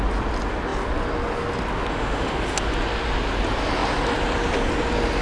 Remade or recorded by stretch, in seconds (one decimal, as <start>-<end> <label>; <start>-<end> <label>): 0.0-1.9 recorded; 1.9-2.4 remade; 2.4-5.2 recorded